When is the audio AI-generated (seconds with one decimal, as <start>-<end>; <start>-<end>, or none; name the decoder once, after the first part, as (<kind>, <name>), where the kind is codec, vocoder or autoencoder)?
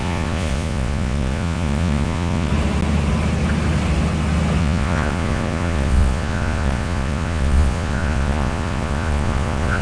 0.0-2.5 (vocoder, Vocos); 4.6-9.8